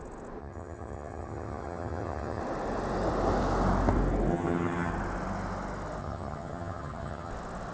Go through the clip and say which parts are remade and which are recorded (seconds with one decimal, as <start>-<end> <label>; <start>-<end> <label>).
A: 0.0-0.4 recorded; 0.4-2.4 remade; 2.4-4.3 recorded; 4.3-4.9 remade; 4.9-6.0 recorded; 6.0-7.3 remade; 7.3-7.7 recorded